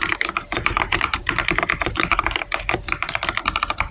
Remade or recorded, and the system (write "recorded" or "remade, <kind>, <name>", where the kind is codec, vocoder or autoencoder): recorded